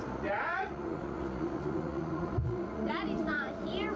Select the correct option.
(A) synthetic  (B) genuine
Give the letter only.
A